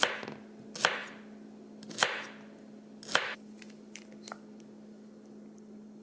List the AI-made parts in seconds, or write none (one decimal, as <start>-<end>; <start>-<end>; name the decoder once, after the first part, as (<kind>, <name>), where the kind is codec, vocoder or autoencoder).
none